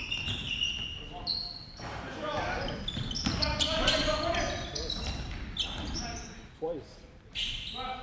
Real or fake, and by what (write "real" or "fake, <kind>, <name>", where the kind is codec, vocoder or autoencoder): real